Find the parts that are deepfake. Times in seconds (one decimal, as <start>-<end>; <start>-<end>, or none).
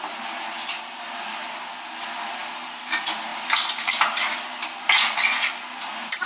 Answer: none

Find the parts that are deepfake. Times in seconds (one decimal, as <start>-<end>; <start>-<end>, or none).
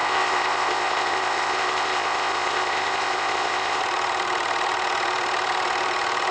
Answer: 0.0-3.8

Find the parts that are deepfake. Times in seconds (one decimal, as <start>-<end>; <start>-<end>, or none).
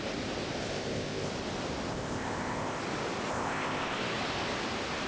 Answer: 0.6-1.3; 1.9-2.8; 3.3-4.0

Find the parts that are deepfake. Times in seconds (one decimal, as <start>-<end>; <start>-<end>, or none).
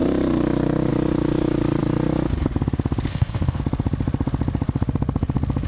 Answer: 3.1-3.6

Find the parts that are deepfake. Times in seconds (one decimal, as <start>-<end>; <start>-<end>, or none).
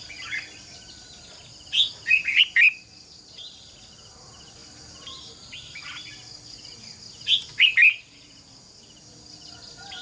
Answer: none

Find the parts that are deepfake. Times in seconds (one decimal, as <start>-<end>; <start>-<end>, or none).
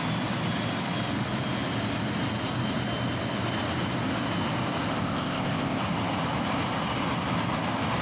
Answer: 4.9-5.8